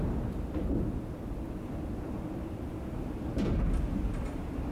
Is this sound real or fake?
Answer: real